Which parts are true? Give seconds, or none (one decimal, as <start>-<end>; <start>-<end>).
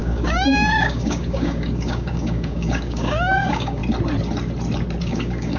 3.8-5.0